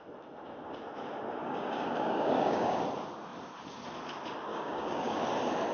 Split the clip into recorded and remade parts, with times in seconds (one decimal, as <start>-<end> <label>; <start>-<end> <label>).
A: 0.0-1.4 recorded; 1.4-2.8 remade; 2.8-4.5 recorded; 4.5-5.2 remade; 5.2-5.7 recorded